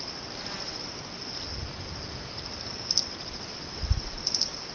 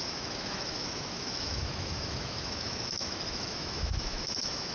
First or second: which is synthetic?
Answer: second